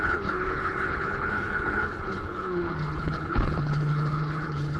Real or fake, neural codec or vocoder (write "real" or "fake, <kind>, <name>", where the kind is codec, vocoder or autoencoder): fake, codec, HILCodec